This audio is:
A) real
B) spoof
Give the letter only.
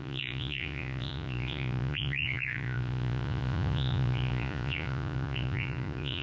B